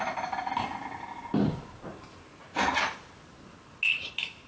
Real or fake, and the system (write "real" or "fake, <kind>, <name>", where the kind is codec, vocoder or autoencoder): real